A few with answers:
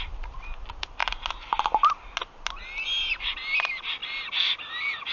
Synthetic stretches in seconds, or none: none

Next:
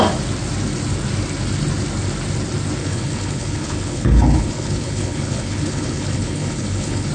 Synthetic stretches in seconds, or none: 2.8-7.1

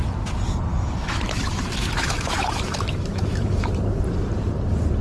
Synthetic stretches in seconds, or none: 0.7-3.7